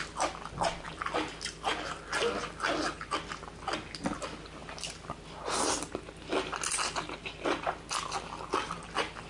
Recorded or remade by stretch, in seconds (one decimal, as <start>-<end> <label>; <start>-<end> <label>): 0.0-1.7 recorded; 1.7-3.1 remade; 3.1-4.6 recorded; 4.6-5.2 remade; 5.2-9.3 recorded